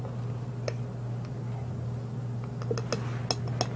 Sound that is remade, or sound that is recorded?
recorded